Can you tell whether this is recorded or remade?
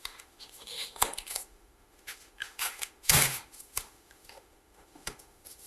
remade